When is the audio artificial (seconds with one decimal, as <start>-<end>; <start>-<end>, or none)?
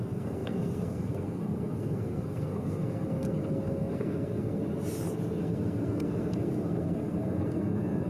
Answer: 0.0-4.6; 5.4-8.1